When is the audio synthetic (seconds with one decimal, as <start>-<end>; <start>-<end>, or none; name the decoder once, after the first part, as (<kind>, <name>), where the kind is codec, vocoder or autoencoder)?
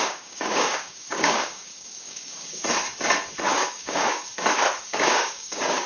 0.0-2.6 (codec, DAC); 3.5-4.3; 4.9-5.9